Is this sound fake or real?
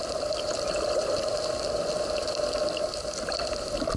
fake